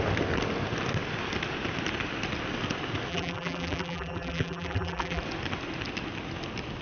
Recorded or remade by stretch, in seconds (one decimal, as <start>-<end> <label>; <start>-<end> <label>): 0.0-3.1 recorded; 3.1-5.2 remade; 5.2-6.8 recorded